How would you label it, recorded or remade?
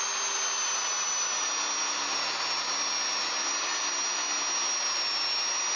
recorded